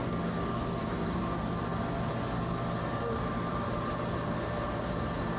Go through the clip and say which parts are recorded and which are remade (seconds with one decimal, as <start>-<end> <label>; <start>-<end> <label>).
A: 0.0-0.8 recorded; 0.8-1.7 remade; 1.7-2.9 recorded; 2.9-5.4 remade